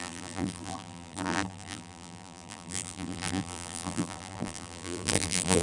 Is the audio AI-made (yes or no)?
yes